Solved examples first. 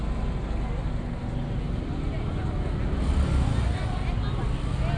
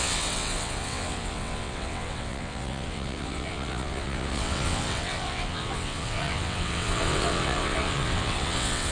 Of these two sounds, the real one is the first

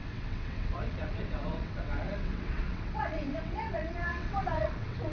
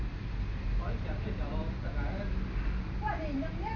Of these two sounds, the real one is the second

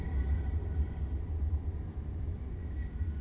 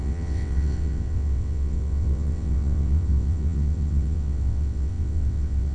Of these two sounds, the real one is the first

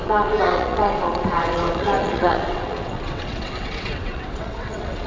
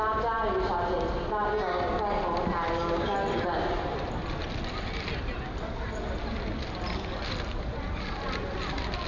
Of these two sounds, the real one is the second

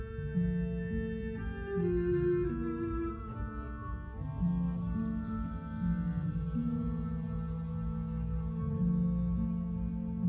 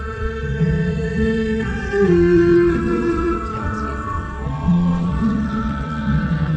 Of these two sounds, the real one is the first